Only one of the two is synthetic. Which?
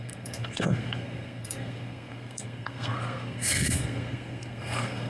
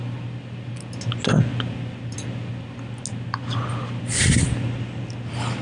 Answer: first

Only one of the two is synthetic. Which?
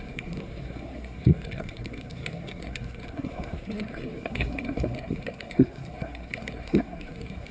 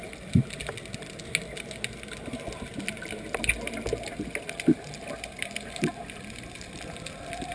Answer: first